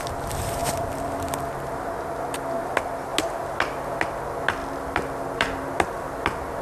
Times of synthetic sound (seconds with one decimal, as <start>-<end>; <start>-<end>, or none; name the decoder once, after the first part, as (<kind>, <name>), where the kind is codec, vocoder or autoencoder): 0.6-1.2 (vocoder, BigVGAN v2); 4.6-5.6